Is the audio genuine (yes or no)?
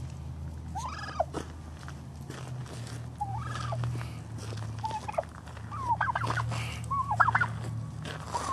yes